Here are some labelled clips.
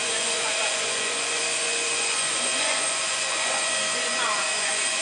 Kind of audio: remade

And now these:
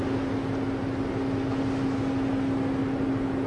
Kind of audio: recorded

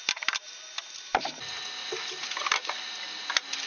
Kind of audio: recorded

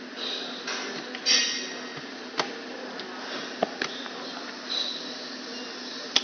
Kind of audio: recorded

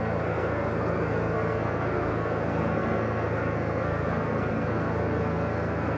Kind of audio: remade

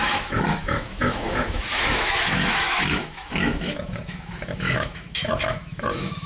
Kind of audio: remade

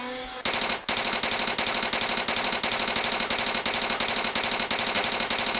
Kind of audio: recorded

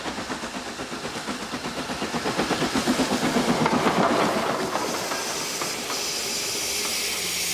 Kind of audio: recorded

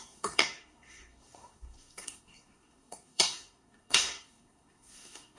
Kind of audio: remade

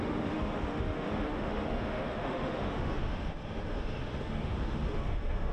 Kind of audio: remade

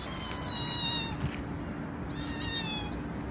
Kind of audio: recorded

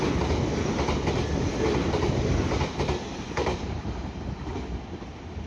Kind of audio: recorded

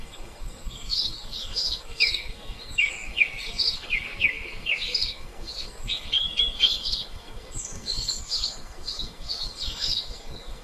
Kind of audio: remade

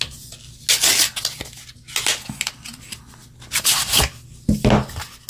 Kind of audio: recorded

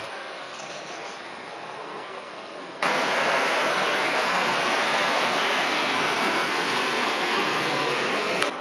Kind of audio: remade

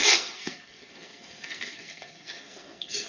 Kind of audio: remade